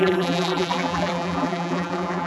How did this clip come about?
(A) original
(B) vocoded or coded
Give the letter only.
B